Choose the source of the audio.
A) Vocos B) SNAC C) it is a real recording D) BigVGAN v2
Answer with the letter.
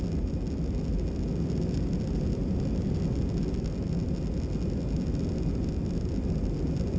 C